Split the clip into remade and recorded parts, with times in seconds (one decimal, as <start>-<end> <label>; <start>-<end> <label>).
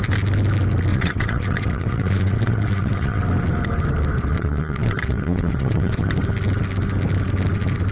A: 0.0-0.9 recorded; 0.9-3.2 remade; 3.2-4.3 recorded; 4.3-6.1 remade; 6.1-7.9 recorded